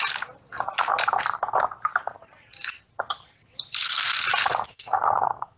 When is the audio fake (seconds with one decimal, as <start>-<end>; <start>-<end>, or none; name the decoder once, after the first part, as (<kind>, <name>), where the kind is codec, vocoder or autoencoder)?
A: 4.7-5.6 (codec, SNAC)